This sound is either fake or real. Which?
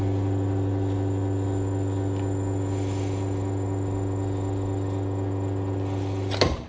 real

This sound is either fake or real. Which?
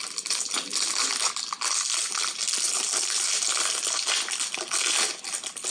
real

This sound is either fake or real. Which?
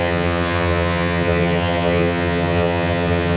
fake